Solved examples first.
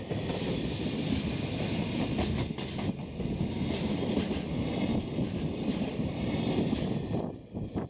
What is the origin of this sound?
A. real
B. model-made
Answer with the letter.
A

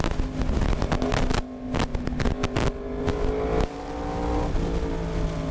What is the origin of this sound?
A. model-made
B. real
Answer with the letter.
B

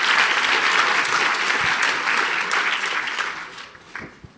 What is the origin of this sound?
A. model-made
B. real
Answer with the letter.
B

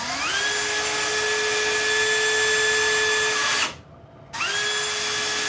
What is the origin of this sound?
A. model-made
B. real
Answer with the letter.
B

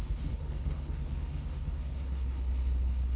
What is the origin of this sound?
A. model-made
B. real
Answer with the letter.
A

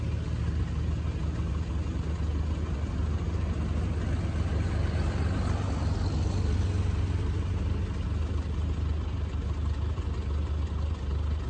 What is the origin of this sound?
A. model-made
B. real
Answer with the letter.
B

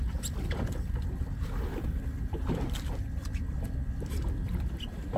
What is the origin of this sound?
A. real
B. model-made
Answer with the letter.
B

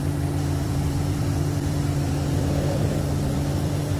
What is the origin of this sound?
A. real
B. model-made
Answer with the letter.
B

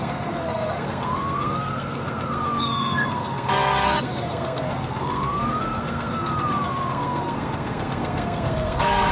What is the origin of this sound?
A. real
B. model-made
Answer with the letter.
B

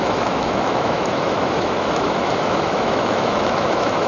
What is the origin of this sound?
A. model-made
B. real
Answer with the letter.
A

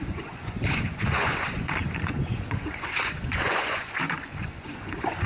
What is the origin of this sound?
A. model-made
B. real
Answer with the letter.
A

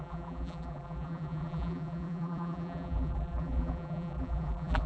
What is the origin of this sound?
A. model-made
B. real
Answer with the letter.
A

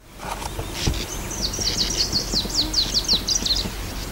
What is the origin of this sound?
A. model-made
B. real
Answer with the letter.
B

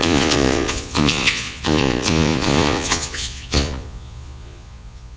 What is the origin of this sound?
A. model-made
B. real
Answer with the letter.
A